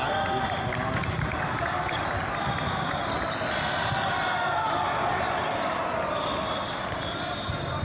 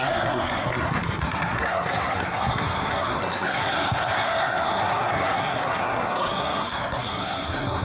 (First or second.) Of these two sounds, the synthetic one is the second